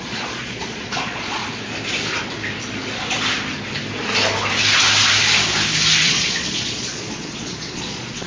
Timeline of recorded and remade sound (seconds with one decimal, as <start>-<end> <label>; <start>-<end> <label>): 0.0-1.4 remade; 1.4-6.0 recorded; 6.0-8.3 remade